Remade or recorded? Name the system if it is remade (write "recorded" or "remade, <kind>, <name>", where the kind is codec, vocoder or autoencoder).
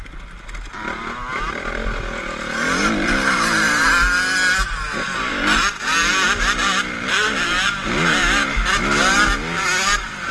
recorded